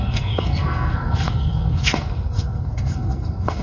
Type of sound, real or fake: fake